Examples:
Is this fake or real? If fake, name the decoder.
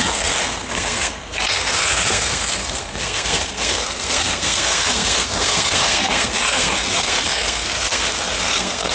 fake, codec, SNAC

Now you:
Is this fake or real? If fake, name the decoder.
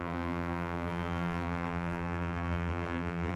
fake, vocoder, BigVGAN v2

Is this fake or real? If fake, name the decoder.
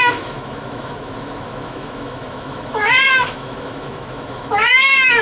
fake, autoencoder, DAC-VAE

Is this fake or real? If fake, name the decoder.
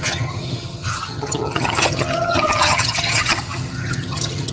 fake, vocoder, HiFi-GAN